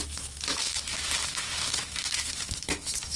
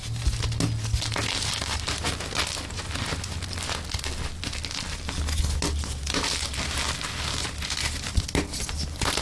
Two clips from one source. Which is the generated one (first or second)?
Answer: first